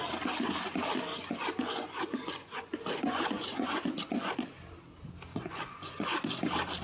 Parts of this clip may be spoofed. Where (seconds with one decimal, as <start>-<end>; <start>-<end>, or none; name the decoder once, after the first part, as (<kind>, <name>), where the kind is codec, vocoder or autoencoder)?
1.1-4.3 (vocoder, Vocos); 5.3-6.3